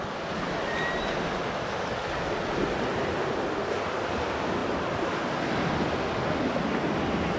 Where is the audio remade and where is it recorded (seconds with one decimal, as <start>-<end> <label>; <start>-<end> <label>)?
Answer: 0.0-7.4 recorded